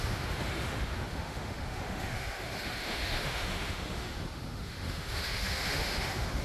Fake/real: fake